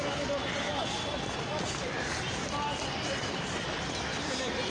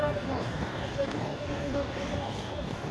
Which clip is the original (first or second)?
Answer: first